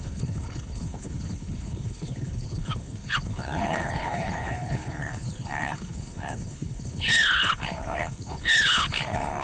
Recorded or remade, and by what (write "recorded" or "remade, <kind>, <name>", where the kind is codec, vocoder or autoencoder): remade, codec, HILCodec